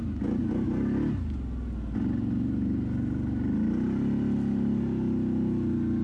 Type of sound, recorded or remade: recorded